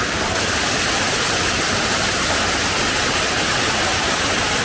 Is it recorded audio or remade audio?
recorded